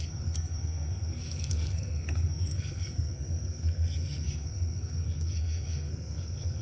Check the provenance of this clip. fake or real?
fake